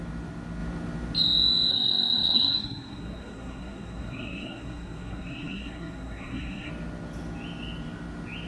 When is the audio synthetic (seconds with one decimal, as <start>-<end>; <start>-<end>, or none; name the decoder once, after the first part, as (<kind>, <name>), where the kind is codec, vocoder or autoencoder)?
1.7-6.7 (codec, SNAC)